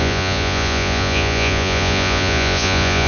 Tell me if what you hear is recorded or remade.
remade